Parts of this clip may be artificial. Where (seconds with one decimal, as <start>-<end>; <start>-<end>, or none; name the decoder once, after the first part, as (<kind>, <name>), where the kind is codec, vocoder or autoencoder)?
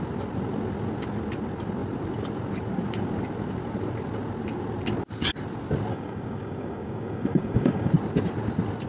5.9-7.9 (codec, DAC)